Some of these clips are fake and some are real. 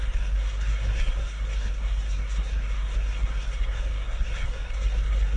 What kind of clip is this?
fake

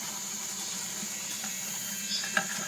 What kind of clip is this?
real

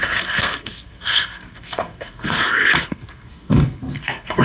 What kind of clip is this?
fake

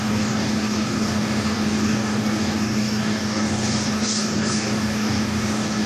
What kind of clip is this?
fake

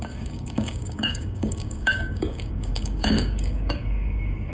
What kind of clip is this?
fake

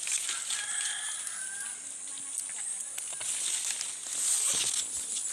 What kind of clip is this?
real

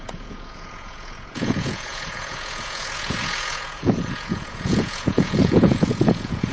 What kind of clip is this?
fake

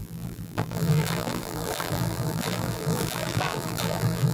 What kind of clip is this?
fake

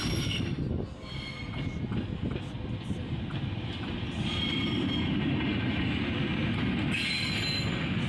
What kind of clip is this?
real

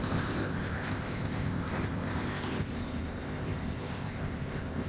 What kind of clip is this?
fake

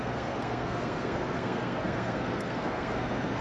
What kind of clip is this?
fake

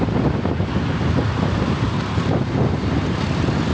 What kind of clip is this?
real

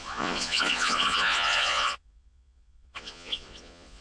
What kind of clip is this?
fake